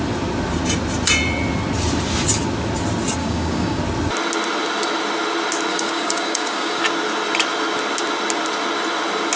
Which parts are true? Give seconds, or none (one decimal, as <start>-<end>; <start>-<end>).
0.0-3.2; 3.8-5.7; 6.8-9.4